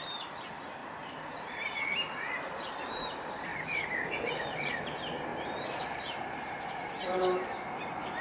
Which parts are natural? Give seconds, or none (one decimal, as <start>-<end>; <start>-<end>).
none

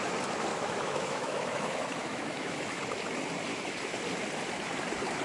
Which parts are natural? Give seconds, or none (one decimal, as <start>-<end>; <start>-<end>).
0.0-0.5; 2.8-3.5; 4.0-5.2

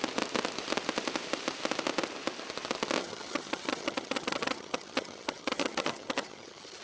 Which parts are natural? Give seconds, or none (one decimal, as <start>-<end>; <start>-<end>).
0.0-3.0